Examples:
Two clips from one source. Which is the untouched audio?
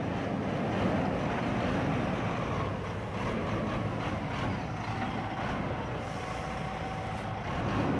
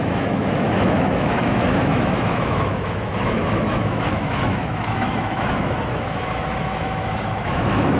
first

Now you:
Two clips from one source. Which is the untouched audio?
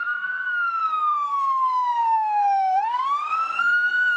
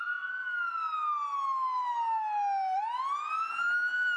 second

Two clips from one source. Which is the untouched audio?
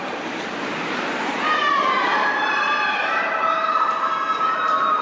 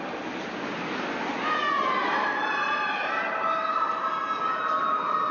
second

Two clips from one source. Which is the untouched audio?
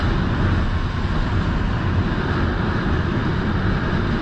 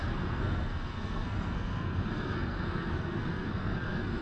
first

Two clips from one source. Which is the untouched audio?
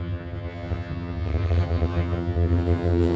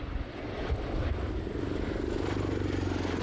second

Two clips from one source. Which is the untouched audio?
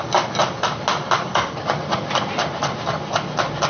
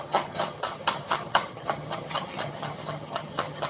first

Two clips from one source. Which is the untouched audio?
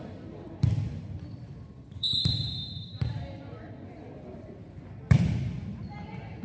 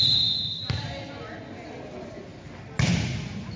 second